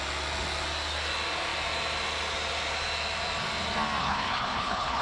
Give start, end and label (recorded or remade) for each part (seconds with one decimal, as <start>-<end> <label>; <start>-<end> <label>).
0.0-4.0 recorded; 4.0-5.0 remade